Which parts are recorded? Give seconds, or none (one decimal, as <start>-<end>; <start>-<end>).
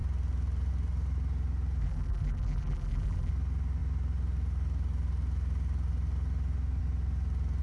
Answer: 0.0-1.8; 3.3-7.6